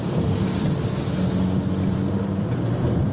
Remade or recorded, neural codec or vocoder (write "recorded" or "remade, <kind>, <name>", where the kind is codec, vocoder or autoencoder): recorded